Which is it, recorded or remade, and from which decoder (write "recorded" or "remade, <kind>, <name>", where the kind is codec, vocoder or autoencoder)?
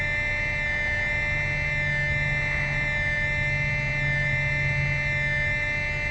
recorded